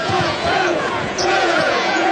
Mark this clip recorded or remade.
remade